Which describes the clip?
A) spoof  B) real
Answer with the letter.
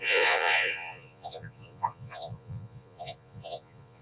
A